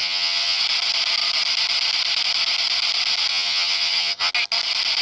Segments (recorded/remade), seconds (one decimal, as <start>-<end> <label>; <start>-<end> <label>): 0.0-0.6 remade; 0.6-3.3 recorded; 3.3-4.3 remade; 4.3-5.0 recorded